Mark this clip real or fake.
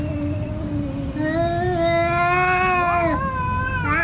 real